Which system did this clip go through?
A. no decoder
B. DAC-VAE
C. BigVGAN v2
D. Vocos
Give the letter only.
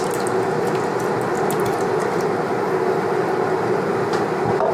A